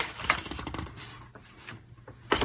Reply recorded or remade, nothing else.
remade